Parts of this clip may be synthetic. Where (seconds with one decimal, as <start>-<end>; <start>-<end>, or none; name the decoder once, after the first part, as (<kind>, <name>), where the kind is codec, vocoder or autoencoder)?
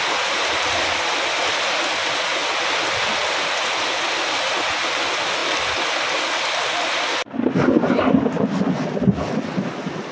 none